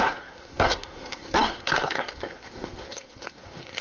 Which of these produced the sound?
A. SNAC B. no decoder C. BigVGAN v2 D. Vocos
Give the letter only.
A